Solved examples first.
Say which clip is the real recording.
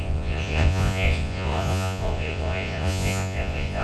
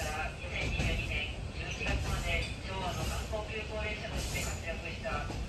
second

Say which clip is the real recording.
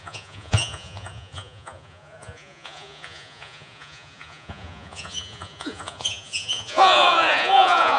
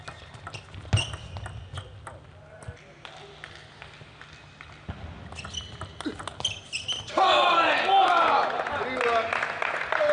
second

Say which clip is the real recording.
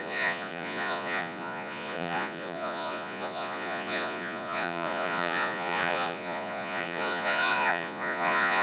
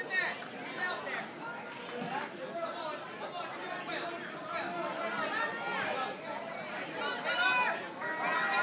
second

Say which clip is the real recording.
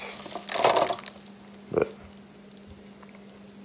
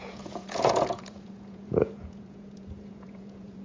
first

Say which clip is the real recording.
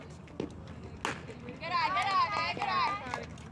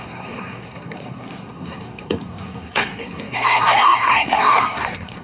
first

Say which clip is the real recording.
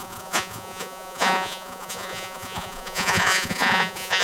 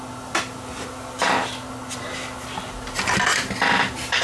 second